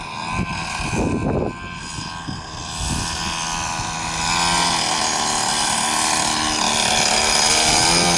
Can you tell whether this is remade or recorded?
recorded